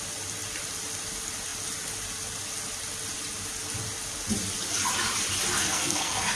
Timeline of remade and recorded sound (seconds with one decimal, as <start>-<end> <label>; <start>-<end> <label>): 0.0-5.6 recorded; 5.6-6.4 remade